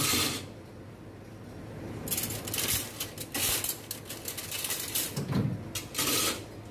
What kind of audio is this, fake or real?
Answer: real